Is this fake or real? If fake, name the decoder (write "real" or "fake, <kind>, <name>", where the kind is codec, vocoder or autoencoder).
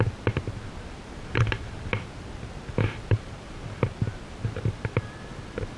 real